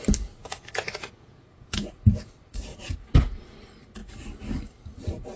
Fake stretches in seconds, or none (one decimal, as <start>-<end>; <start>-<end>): 0.4-2.3; 2.7-3.4